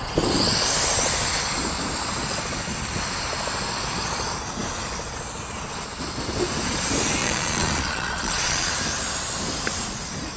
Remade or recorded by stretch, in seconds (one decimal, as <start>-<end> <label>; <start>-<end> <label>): 0.0-7.2 recorded; 7.2-8.7 remade; 8.7-10.4 recorded